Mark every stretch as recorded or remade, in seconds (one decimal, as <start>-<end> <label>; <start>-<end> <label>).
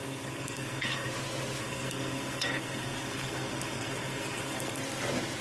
0.0-1.1 remade; 1.1-1.6 recorded; 1.6-4.8 remade; 4.8-5.4 recorded